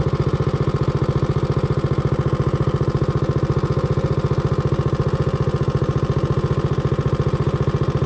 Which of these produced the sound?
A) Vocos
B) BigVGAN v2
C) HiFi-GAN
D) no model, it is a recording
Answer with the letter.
D